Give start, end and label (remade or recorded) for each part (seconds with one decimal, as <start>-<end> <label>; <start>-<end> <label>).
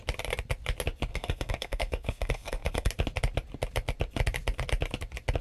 0.0-1.1 recorded; 1.1-2.9 remade; 2.9-5.4 recorded